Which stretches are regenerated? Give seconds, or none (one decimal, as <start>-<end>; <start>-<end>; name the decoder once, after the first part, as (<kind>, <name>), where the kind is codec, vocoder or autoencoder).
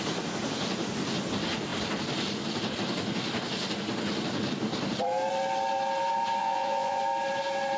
6.4-7.0 (vocoder, Vocos)